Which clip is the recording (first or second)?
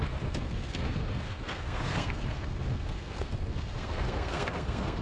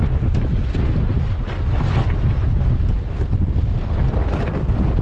second